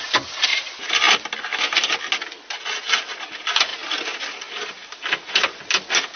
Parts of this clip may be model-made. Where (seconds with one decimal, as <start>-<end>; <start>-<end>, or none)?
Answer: none